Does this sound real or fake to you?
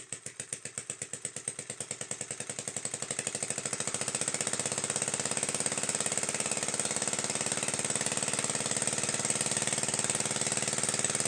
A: real